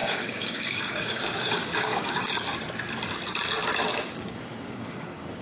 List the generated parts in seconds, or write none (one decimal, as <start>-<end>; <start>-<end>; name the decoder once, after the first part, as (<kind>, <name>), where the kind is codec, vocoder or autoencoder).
0.0-2.3 (codec, DAC); 3.9-5.4